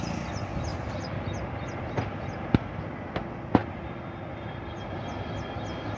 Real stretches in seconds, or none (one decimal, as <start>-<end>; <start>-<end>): 0.0-6.0